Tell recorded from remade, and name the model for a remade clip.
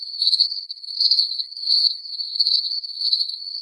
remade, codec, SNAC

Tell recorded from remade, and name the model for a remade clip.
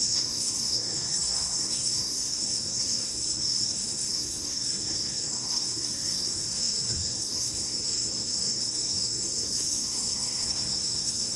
remade, codec, SNAC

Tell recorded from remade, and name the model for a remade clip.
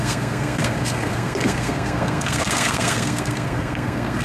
remade, codec, SNAC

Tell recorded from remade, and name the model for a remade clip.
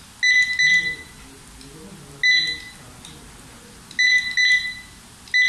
recorded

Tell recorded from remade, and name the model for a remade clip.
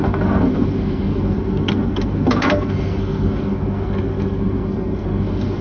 remade, codec, SNAC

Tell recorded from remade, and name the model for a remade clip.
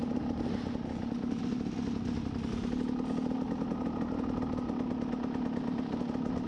recorded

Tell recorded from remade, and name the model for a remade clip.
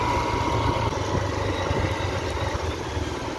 recorded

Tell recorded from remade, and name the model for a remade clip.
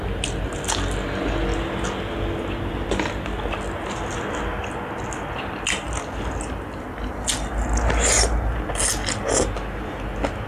recorded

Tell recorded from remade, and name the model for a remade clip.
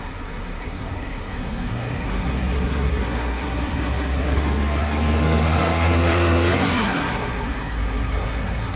remade, codec, SNAC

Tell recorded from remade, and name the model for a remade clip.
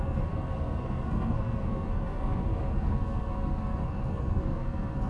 remade, codec, SNAC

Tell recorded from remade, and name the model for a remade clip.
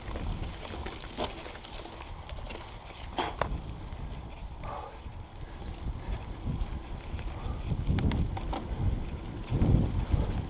recorded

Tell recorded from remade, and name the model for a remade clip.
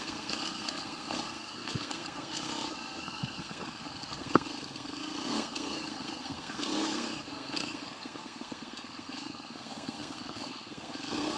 remade, codec, SNAC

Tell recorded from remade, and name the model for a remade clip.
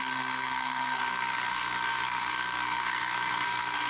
remade, codec, SNAC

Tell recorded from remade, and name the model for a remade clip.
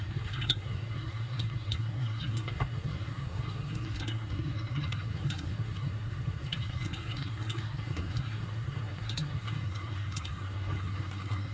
remade, codec, SNAC